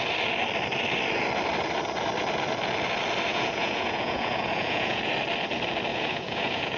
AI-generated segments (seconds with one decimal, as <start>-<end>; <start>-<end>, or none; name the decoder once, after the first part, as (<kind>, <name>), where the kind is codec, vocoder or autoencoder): 3.3-5.1 (vocoder, Vocos); 5.9-6.8